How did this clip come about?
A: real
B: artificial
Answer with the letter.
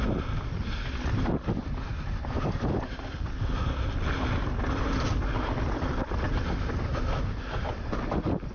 A